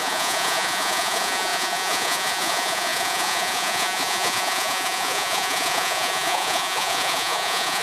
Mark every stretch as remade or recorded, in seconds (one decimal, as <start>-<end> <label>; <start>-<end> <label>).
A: 0.0-7.8 remade